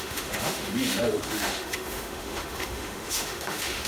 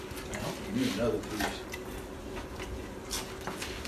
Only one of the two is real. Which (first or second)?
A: second